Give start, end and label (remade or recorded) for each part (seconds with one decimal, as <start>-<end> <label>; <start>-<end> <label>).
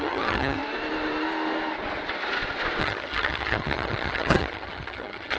0.0-0.6 remade; 0.6-2.8 recorded; 2.8-5.4 remade